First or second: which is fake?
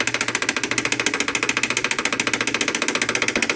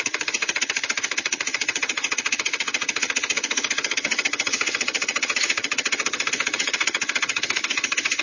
second